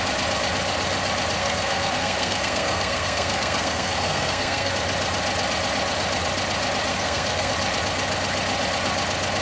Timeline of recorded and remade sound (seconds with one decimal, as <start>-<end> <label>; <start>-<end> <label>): 0.0-1.4 recorded; 1.4-4.7 remade; 4.7-6.9 recorded; 6.9-7.5 remade; 7.5-9.4 recorded